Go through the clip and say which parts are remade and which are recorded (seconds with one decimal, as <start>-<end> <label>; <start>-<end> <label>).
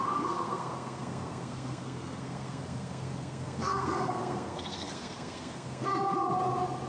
0.0-5.9 remade; 5.9-6.9 recorded